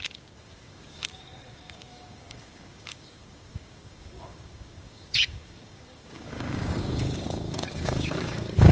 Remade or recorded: remade